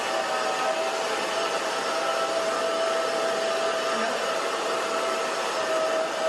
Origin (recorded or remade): recorded